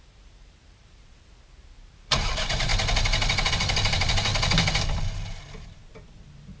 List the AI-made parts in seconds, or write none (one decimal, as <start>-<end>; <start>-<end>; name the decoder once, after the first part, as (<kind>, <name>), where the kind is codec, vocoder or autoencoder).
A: 0.0-2.7 (vocoder, BigVGAN v2); 3.5-4.3